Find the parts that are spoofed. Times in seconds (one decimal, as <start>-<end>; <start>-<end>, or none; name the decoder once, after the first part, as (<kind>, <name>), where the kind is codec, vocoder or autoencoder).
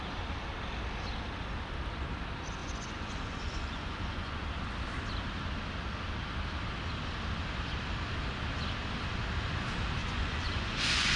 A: 2.6-4.5 (vocoder, Vocos); 10.0-11.2